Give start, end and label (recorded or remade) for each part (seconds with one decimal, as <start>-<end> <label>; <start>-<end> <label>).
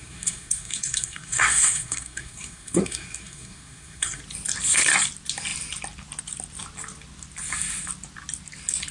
0.0-4.2 remade; 4.2-8.9 recorded